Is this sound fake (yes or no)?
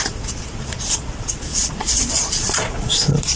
yes